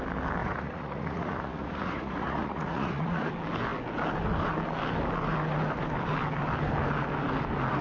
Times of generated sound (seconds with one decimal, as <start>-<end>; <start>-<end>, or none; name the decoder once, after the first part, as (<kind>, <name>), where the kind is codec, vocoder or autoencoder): 0.4-3.3 (vocoder, Vocos)